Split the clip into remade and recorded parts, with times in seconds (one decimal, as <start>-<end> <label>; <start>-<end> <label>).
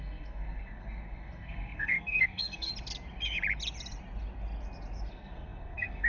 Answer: 0.0-2.7 remade; 2.7-5.1 recorded; 5.1-6.1 remade